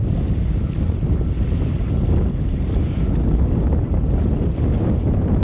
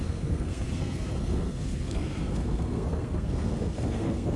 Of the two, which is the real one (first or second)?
first